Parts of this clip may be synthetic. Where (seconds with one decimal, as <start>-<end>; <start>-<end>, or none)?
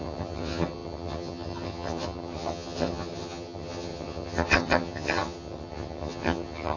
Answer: 0.0-6.8